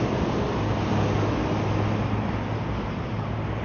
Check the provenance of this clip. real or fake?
real